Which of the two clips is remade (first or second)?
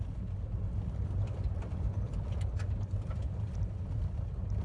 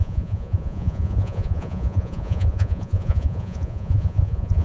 second